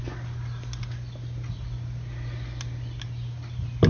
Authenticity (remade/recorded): recorded